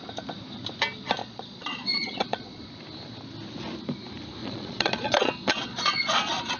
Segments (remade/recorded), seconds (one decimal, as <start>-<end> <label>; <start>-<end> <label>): 0.0-1.2 recorded; 1.2-2.6 remade; 2.6-4.4 recorded; 4.4-6.6 remade